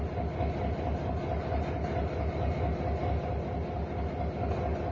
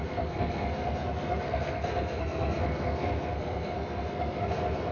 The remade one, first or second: second